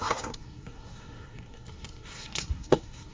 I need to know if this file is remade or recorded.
remade